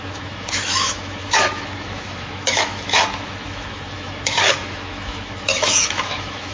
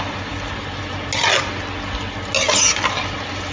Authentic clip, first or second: second